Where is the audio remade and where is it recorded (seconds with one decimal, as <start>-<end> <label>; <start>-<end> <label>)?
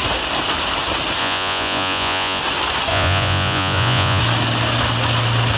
0.0-1.2 recorded; 1.2-2.4 remade; 2.4-2.9 recorded; 2.9-4.2 remade; 4.2-5.6 recorded